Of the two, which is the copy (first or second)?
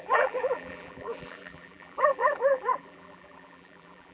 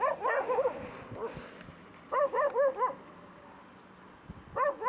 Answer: first